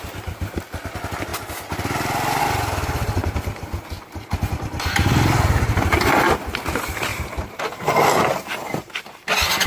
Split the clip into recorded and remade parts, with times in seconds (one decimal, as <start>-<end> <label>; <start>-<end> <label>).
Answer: 0.0-7.1 recorded; 7.1-7.6 remade; 7.6-9.7 recorded